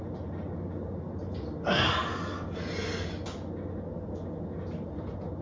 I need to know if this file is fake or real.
real